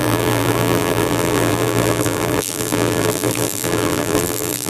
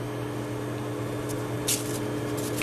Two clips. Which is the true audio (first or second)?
second